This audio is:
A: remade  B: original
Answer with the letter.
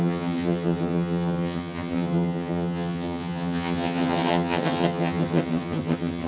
A